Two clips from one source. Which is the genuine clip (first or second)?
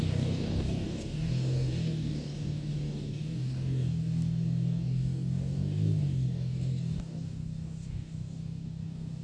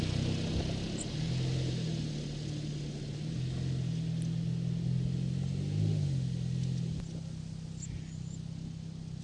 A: second